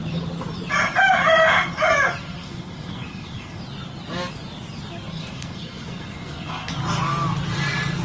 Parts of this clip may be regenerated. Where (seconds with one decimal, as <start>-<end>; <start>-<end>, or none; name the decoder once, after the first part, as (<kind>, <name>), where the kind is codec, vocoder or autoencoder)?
2.2-3.6 (codec, SNAC); 5.2-6.7